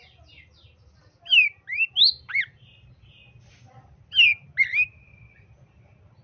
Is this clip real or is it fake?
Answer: real